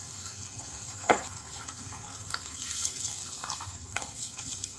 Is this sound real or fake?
fake